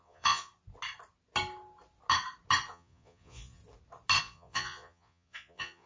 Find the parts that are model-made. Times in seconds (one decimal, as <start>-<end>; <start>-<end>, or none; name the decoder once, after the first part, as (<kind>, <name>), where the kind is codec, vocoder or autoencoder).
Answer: 0.0-0.5 (vocoder, Vocos); 2.7-3.6; 4.2-5.9